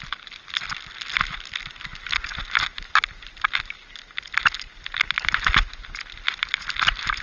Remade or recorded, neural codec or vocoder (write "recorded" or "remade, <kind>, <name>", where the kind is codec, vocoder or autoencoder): recorded